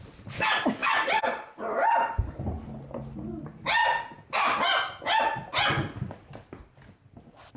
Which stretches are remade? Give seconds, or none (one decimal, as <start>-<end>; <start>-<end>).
none